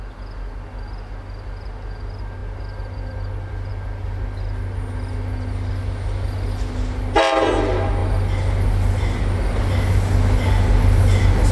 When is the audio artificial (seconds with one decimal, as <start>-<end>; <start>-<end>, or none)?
none